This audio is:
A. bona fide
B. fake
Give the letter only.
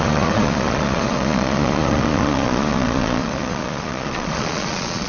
B